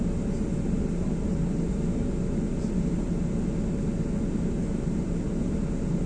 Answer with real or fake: real